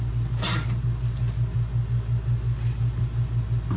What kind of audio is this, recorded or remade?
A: recorded